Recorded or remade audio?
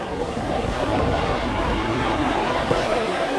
remade